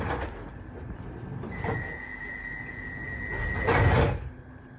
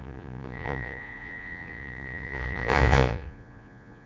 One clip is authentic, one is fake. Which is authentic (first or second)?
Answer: first